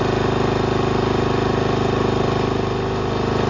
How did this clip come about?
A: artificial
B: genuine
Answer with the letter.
B